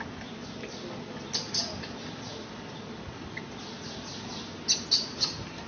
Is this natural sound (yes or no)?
yes